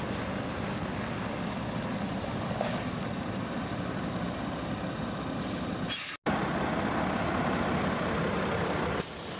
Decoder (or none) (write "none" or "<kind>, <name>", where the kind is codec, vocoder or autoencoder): none